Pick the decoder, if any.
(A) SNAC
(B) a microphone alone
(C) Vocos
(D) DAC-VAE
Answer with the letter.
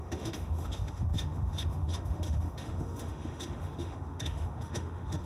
D